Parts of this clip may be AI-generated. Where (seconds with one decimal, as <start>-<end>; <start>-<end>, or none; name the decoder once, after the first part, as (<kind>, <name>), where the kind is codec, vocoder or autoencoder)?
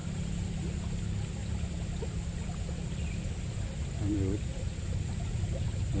0.0-0.7 (vocoder, BigVGAN v2); 1.4-4.7